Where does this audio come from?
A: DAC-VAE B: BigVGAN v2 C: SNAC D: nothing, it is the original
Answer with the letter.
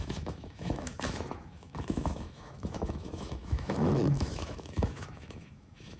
A